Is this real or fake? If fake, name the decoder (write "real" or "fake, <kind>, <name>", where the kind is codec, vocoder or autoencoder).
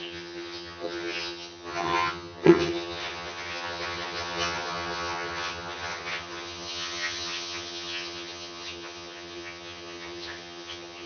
fake, vocoder, HiFi-GAN